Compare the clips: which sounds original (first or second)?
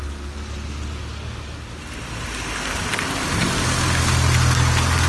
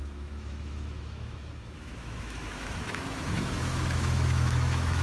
first